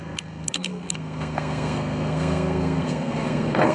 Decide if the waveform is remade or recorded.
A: remade